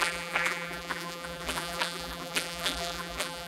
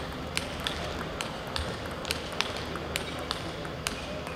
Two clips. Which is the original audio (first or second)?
second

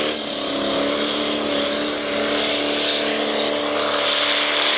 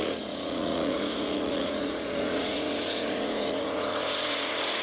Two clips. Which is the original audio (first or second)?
first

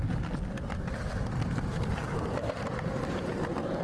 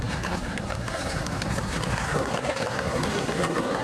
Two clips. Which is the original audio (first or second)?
first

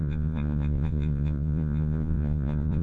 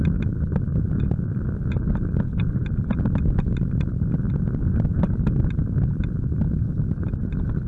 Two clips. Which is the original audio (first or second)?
second